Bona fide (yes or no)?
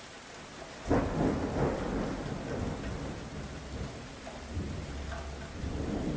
yes